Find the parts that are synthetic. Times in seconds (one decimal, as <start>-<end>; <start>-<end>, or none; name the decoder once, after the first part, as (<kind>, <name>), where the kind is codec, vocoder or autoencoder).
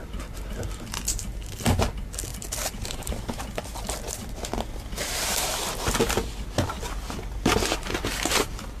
none